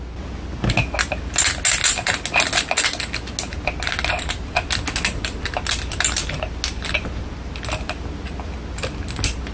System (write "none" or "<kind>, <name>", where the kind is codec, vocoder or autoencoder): none